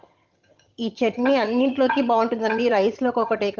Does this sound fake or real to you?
fake